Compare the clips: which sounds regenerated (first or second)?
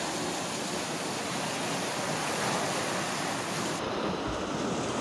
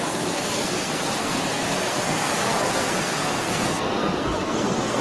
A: second